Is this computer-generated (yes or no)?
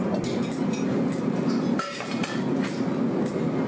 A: no